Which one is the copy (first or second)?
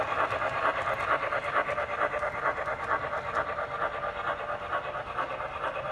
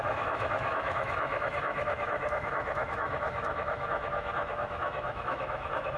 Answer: second